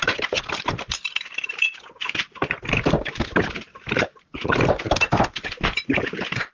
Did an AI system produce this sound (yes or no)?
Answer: no